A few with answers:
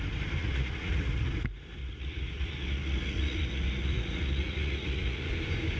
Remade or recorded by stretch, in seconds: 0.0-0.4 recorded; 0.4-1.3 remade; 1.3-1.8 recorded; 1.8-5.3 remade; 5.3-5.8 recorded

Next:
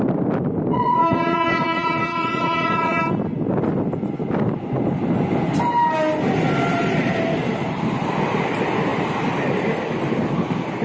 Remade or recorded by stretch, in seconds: 0.0-0.7 recorded; 0.7-3.0 remade; 3.0-10.8 recorded

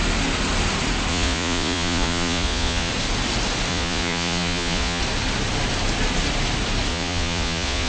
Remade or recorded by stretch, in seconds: 0.0-1.1 recorded; 1.1-2.9 remade; 2.9-3.7 recorded; 3.7-5.0 remade; 5.0-6.9 recorded; 6.9-7.9 remade

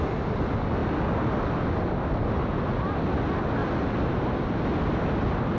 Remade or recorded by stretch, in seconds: 0.0-5.6 recorded

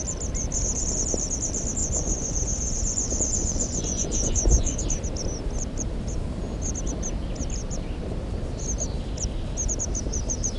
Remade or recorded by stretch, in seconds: 0.0-1.8 recorded; 1.8-4.8 remade; 4.8-10.6 recorded

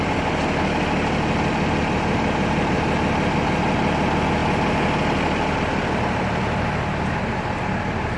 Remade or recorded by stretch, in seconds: 0.0-8.2 recorded